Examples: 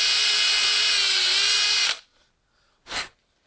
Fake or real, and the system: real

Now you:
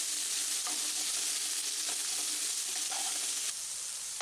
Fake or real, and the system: real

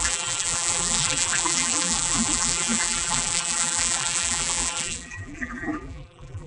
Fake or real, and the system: fake, vocoder, BigVGAN v2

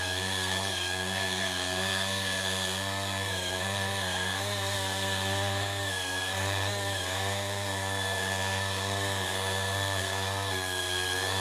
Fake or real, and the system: fake, codec, SNAC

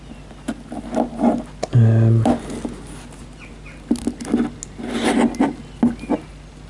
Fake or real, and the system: real